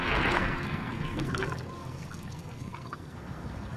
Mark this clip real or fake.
fake